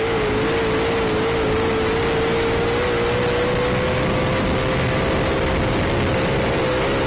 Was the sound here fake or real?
real